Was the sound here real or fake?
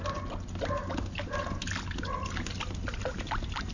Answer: real